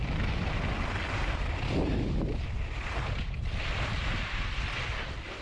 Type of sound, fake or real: real